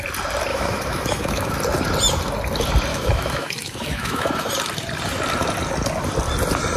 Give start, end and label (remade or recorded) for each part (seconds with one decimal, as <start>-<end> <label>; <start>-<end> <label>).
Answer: 0.0-0.5 recorded; 0.5-1.5 remade; 1.5-2.9 recorded; 2.9-4.5 remade; 4.5-6.8 recorded